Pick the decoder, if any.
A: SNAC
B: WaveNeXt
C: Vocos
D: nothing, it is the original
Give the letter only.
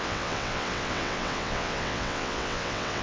B